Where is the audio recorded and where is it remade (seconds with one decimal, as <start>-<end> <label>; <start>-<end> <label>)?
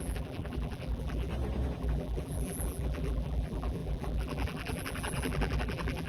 0.0-1.3 remade; 1.3-1.8 recorded; 1.8-6.1 remade